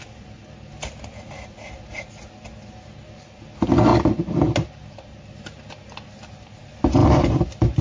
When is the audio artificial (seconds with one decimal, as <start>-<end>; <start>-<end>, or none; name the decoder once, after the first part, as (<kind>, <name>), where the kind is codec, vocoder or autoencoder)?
none

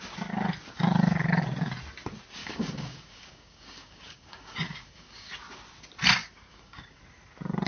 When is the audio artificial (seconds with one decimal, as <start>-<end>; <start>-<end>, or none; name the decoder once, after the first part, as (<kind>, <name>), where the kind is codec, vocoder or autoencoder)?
2.4-5.3 (codec, DAC); 6.2-7.0

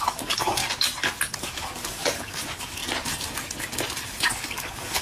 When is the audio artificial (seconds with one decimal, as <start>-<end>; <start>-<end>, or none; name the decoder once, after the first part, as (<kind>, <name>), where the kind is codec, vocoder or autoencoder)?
0.0-0.6 (codec, DAC); 1.4-2.8; 4.3-5.0

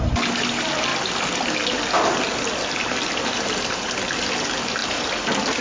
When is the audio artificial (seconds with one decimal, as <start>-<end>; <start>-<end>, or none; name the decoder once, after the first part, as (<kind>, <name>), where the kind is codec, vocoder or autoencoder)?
none

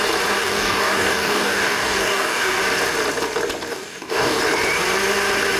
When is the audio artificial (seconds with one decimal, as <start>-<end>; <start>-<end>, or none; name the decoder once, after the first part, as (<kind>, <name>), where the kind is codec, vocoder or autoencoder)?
0.4-2.6 (codec, DAC); 3.7-4.4

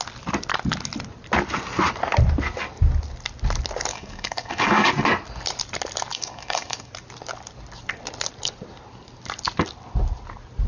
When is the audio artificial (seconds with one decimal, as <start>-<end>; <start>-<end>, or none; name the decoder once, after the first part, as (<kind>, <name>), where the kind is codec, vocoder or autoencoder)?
3.9-4.9 (codec, DAC); 6.1-6.9